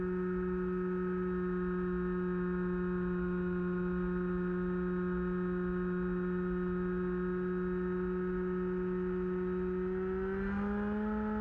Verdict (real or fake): real